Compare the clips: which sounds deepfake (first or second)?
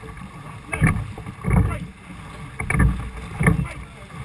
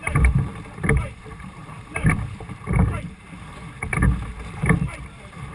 second